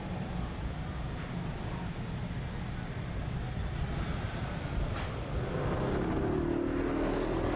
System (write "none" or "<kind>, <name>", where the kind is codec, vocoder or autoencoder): none